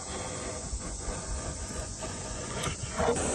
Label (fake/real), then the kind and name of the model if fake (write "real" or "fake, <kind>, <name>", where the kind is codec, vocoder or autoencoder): fake, vocoder, Vocos